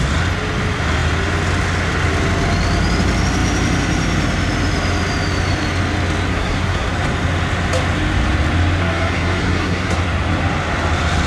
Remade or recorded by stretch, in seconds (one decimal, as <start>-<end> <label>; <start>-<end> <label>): 0.0-6.3 recorded; 6.3-6.9 remade; 6.9-8.8 recorded; 8.8-10.0 remade; 10.0-11.3 recorded